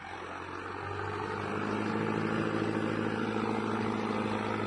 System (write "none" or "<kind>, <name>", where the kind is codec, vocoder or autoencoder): none